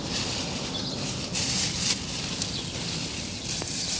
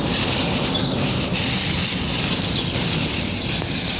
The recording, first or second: second